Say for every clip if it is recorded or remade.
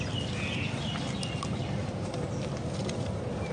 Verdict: recorded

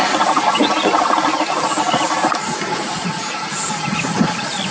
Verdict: recorded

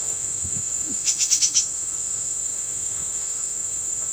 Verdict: remade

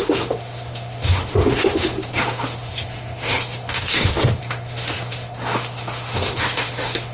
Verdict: remade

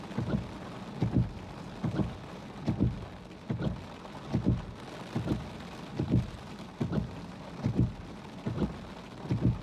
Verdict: recorded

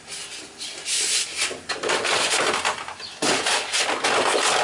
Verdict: recorded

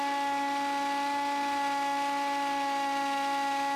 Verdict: recorded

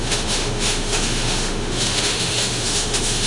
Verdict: remade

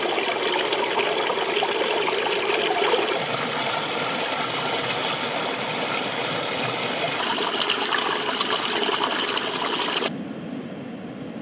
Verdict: recorded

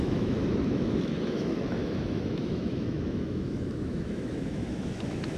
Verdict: remade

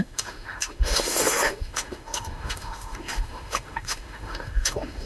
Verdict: remade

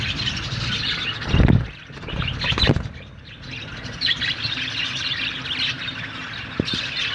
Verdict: recorded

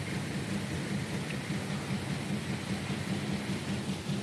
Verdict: recorded